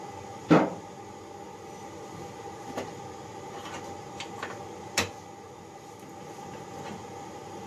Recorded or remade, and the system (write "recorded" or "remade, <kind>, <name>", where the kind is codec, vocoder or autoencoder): recorded